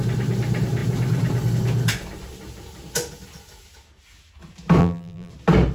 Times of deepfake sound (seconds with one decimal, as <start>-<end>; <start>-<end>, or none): 4.8-5.3